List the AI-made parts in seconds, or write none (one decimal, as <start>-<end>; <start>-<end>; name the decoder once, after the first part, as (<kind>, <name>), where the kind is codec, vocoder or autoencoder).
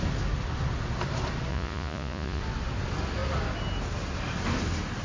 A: 1.5-2.4 (vocoder, Vocos)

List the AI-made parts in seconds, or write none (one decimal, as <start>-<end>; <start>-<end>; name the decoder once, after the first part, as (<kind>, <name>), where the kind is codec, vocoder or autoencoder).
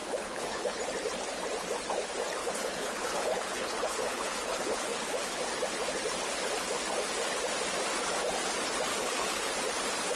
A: 0.0-0.8 (codec, HILCodec); 2.4-5.4; 8.9-9.5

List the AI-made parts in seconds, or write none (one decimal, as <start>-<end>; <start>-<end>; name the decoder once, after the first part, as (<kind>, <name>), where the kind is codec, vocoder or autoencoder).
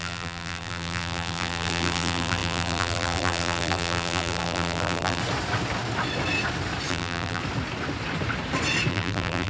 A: 0.0-5.2 (vocoder, BigVGAN v2); 6.9-7.4; 8.9-9.5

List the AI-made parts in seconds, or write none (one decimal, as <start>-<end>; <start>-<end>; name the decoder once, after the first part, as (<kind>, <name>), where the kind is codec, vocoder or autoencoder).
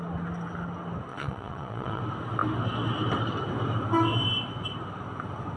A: 1.1-2.0 (vocoder, WaveNeXt)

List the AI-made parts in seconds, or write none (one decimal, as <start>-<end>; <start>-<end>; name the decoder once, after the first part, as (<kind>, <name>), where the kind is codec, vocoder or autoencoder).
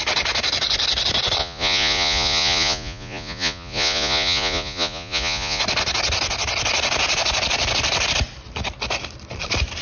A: 1.4-5.6 (vocoder, Vocos)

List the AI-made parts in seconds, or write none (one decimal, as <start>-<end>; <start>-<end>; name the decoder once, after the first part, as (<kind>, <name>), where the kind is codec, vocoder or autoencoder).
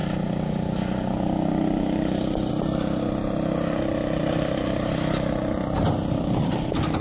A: 4.2-4.9 (vocoder, BigVGAN v2)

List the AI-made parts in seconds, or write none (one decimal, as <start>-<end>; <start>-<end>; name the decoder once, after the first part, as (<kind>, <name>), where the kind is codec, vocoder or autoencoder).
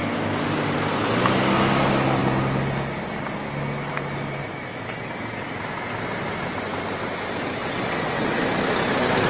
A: 7.6-8.4 (vocoder, WaveNeXt)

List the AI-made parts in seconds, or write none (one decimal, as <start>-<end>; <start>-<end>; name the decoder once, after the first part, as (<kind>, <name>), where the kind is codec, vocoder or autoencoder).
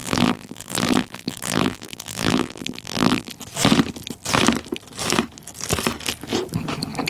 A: 0.0-3.3 (vocoder, BigVGAN v2)